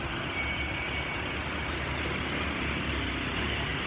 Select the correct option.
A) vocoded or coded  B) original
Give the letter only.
B